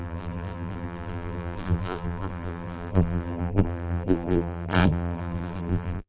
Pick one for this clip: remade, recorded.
remade